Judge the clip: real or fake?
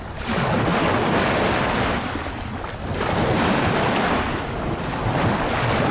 real